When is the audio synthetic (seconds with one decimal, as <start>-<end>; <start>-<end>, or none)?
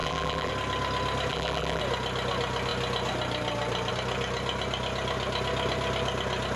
0.0-0.5; 1.3-1.8